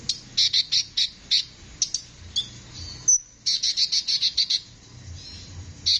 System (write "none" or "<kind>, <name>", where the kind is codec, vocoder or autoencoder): none